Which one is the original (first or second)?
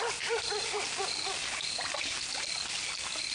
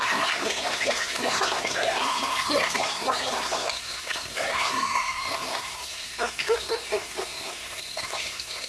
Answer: first